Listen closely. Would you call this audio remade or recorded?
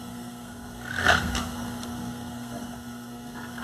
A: remade